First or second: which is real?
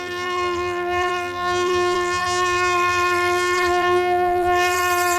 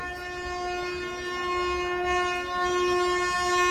second